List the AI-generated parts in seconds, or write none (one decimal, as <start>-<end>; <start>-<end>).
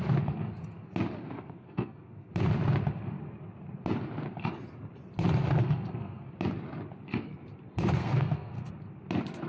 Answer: 1.2-2.3; 5.6-6.3; 8.0-8.7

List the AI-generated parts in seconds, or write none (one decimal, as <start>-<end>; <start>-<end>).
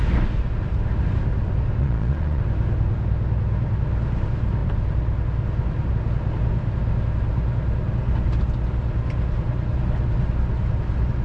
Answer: 1.8-2.4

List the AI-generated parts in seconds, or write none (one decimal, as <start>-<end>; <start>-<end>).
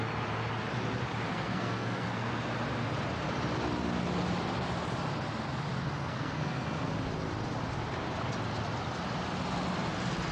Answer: 1.3-2.3; 6.0-6.9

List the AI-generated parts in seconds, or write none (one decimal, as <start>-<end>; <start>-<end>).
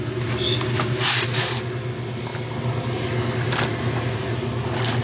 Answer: none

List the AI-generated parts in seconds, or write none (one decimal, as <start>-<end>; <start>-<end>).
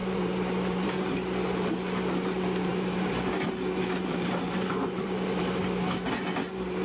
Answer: 0.0-0.9; 2.7-3.3; 4.0-5.4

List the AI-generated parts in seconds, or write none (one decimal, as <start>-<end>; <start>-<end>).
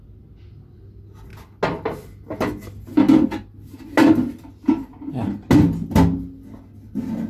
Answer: none